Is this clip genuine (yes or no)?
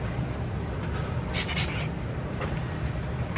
yes